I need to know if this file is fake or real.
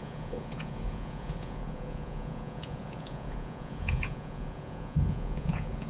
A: fake